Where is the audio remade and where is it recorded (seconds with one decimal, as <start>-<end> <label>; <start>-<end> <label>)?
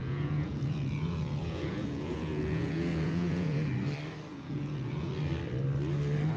0.0-3.7 remade; 3.7-4.3 recorded; 4.3-5.1 remade; 5.1-6.4 recorded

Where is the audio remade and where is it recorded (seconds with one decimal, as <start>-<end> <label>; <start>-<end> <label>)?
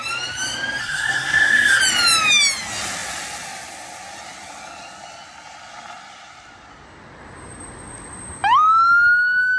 0.0-0.8 recorded; 0.8-1.8 remade; 1.8-9.6 recorded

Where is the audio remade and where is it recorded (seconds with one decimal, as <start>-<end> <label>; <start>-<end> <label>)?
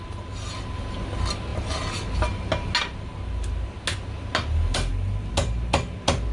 0.0-6.3 recorded